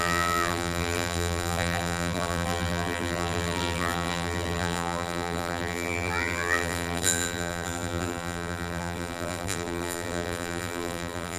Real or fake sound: fake